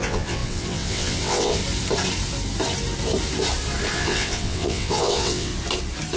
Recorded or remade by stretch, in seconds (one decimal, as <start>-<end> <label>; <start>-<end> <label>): 0.0-1.6 remade; 1.6-3.9 recorded; 3.9-5.5 remade; 5.5-6.2 recorded